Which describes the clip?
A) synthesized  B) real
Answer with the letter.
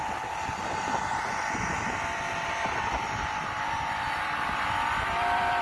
A